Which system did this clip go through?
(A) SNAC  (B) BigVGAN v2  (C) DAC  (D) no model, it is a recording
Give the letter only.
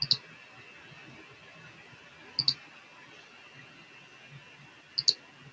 D